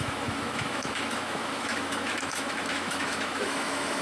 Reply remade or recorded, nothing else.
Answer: remade